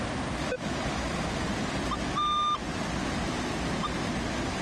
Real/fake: real